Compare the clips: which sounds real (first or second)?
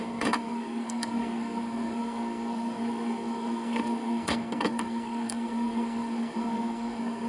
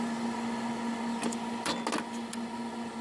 second